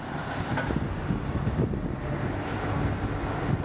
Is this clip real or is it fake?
real